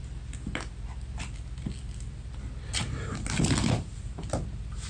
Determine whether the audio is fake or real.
real